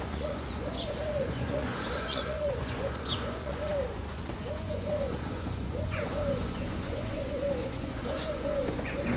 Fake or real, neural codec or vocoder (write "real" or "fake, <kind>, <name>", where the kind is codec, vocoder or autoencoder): fake, vocoder, Vocos